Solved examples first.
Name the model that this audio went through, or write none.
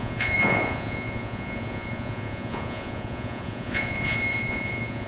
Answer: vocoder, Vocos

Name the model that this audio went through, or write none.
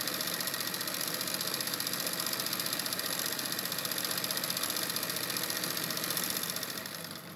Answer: none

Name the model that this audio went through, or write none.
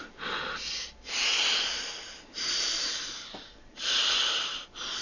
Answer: none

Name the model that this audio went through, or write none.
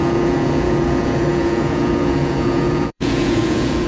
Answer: vocoder, Vocos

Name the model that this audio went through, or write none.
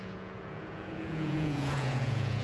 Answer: vocoder, Vocos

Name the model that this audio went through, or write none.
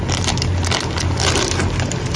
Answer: none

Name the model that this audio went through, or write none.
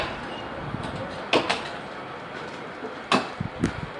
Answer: none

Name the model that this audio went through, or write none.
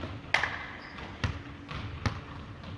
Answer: none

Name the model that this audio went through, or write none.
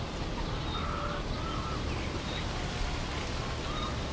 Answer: none